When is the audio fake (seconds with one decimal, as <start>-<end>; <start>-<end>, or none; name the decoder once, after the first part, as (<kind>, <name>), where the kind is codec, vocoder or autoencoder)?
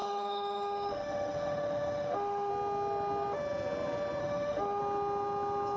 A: 0.0-2.5 (autoencoder, DAC-VAE); 4.2-4.8